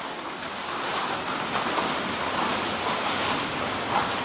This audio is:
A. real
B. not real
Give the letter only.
A